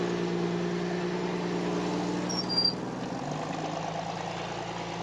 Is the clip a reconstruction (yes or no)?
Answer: no